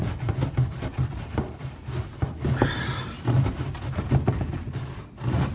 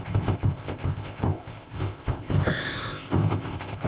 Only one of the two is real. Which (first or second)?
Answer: first